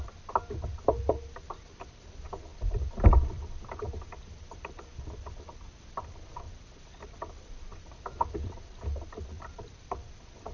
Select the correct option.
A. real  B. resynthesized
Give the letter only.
A